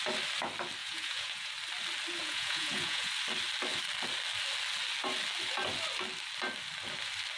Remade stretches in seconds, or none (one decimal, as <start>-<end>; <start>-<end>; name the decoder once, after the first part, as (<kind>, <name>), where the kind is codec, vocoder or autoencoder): 0.8-1.5 (vocoder, Vocos); 2.2-3.1